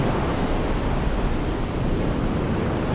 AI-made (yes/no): no